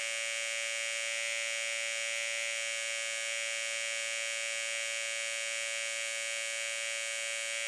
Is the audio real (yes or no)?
yes